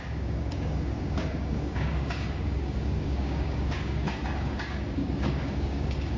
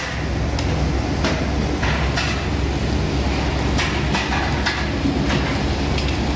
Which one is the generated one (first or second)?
first